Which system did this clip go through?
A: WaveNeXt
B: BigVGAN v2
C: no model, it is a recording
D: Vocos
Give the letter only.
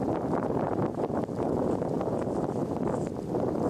C